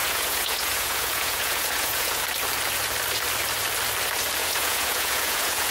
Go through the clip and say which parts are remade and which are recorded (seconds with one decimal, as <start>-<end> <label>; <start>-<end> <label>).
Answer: 0.0-2.2 remade; 2.2-4.4 recorded; 4.4-5.7 remade